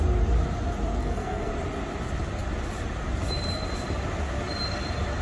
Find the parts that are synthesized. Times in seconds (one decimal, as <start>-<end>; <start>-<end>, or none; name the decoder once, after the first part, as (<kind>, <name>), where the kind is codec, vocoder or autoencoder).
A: 1.0-1.5 (codec, SNAC)